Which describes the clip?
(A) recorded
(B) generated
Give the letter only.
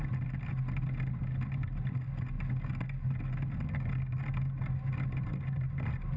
A